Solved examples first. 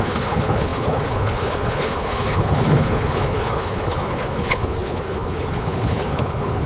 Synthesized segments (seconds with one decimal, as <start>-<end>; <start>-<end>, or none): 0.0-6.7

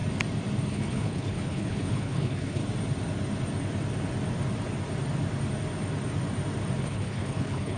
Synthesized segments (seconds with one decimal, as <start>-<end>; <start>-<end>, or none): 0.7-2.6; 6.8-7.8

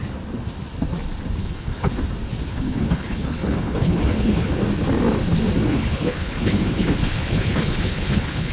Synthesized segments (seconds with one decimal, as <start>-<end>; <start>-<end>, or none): 1.4-1.9; 2.5-4.5; 5.7-8.5

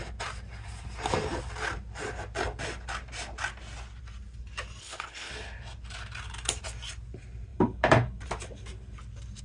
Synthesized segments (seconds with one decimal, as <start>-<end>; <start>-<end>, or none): 4.8-5.3

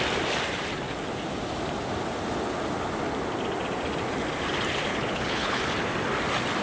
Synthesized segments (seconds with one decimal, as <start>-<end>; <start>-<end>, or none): 4.9-5.6

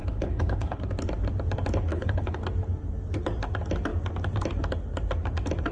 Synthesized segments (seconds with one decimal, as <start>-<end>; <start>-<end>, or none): 0.0-0.8; 1.9-2.4

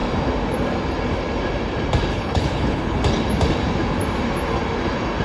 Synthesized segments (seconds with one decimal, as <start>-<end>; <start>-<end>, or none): 2.1-3.0